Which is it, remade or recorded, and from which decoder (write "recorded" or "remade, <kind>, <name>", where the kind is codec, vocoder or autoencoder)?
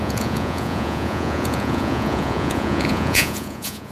remade, vocoder, Vocos